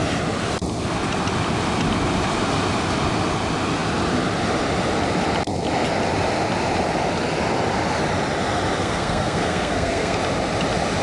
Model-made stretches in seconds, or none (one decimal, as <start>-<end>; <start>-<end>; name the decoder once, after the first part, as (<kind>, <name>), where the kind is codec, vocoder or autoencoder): 8.8-10.2 (codec, SNAC)